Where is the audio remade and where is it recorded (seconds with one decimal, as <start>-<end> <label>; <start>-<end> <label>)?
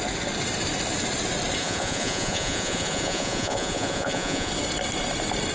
0.0-1.6 recorded; 1.6-4.5 remade; 4.5-5.5 recorded